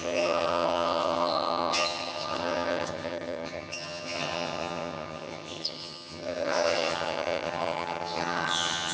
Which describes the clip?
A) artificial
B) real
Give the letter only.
A